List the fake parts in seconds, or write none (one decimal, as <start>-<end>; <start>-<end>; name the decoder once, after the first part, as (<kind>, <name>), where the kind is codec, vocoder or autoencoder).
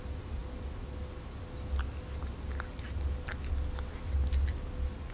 none